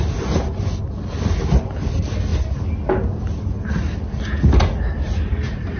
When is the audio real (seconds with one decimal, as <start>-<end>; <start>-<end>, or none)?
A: 0.0-5.8